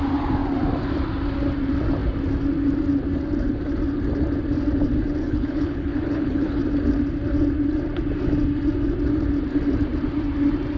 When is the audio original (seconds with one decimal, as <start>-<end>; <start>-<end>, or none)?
0.0-5.2; 6.6-10.8